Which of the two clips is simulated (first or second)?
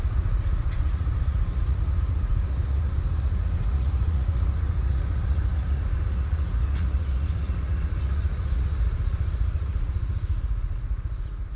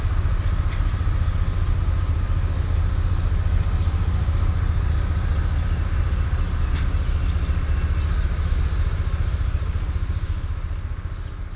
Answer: first